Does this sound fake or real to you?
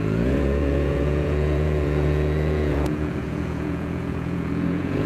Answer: fake